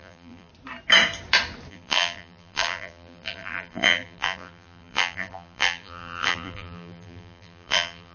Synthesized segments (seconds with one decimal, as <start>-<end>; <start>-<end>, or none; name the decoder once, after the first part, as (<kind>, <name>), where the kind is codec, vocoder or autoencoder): 0.0-0.5 (vocoder, BigVGAN v2); 1.7-8.1